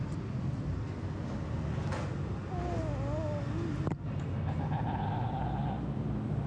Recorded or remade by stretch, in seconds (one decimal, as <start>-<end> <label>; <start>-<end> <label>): 0.0-6.5 recorded